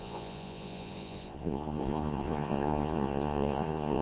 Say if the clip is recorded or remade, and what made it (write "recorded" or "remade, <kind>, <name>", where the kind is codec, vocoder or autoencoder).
remade, vocoder, Vocos